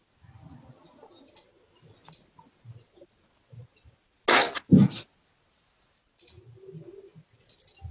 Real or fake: real